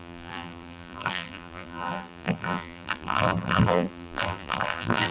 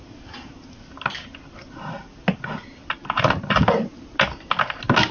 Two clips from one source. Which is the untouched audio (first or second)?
second